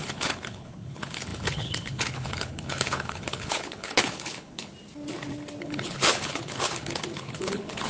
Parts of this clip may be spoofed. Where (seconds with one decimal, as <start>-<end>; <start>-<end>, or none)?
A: 0.0-4.7; 5.6-7.9